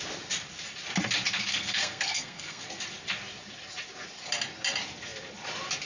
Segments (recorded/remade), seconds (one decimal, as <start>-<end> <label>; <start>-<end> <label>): 0.0-1.5 recorded; 1.5-2.6 remade; 2.6-5.9 recorded